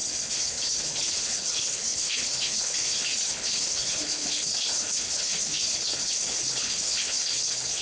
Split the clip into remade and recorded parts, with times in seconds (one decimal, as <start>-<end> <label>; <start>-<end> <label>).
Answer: 0.0-7.8 remade